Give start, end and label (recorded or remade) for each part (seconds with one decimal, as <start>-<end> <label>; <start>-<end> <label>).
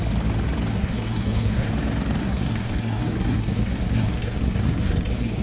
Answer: 0.0-0.7 recorded; 0.7-1.7 remade; 1.7-2.2 recorded; 2.2-5.4 remade